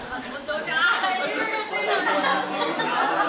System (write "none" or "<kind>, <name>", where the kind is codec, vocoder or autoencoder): vocoder, BigVGAN v2